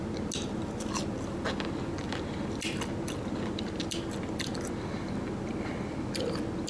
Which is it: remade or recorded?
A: recorded